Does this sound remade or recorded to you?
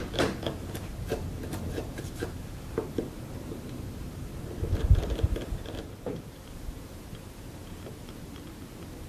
remade